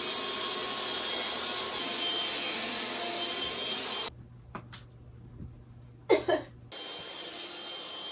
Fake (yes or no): no